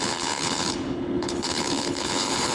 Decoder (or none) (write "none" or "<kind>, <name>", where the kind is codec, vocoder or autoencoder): codec, HILCodec